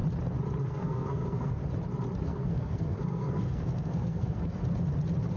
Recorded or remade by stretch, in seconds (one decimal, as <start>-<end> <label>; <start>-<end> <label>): 0.0-0.6 recorded; 0.6-1.6 remade; 1.6-2.2 recorded; 2.2-4.6 remade; 4.6-5.4 recorded